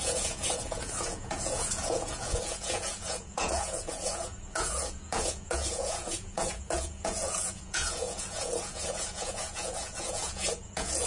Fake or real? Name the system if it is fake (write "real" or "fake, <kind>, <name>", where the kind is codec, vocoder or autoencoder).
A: fake, vocoder, Vocos